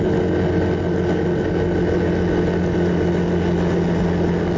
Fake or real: real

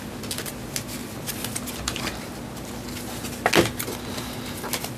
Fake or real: real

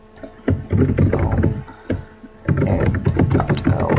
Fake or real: real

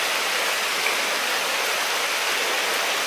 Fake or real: real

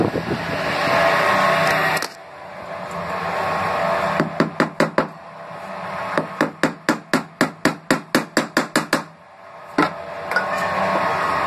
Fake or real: real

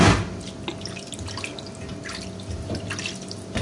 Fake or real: real